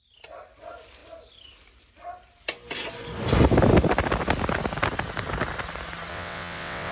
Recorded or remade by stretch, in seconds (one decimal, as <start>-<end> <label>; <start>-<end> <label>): 0.0-6.1 recorded; 6.1-6.9 remade